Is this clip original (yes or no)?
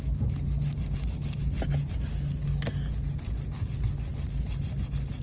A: yes